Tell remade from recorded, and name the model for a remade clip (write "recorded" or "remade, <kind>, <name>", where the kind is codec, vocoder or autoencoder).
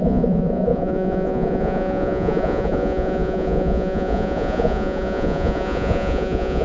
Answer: remade, vocoder, Vocos